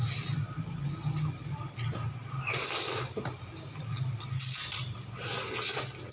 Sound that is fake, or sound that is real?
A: real